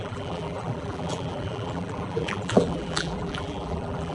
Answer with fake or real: fake